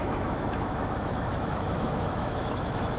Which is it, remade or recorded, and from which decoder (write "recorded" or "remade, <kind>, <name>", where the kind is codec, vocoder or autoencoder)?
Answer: remade, autoencoder, DAC-VAE